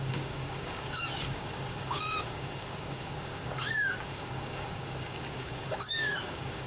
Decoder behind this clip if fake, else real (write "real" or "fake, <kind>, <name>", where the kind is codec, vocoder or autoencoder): fake, codec, DAC